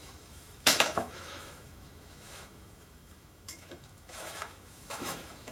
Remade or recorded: remade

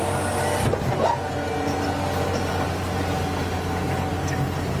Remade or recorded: recorded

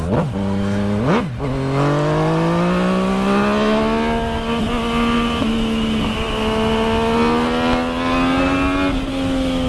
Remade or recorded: recorded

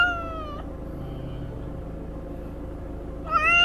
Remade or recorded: recorded